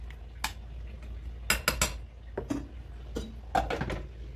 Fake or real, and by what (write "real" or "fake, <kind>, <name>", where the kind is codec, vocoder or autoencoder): real